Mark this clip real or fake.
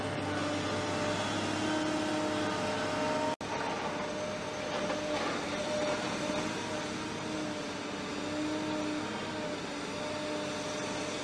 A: real